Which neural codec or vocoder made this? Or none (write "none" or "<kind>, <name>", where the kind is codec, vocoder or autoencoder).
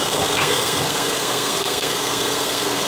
codec, SNAC